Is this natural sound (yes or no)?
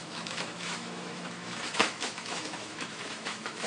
no